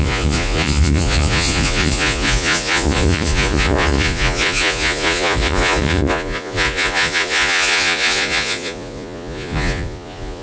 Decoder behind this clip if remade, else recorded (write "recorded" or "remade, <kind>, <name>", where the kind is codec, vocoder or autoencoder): remade, vocoder, Vocos